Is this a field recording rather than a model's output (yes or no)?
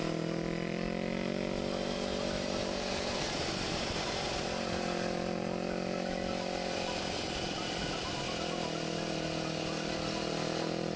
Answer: yes